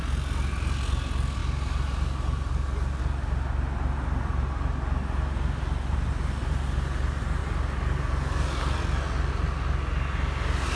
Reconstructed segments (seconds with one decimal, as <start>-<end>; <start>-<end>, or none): none